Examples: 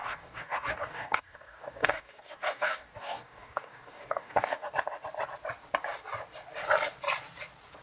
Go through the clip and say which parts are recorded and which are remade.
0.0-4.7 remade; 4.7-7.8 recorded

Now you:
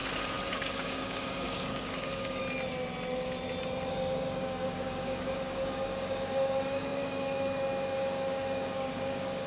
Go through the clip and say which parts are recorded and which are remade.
0.0-0.5 recorded; 0.5-2.4 remade; 2.4-3.9 recorded; 3.9-9.5 remade